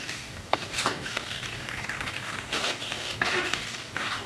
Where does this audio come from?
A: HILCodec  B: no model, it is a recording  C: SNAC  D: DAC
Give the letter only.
D